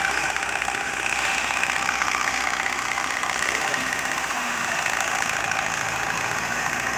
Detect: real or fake fake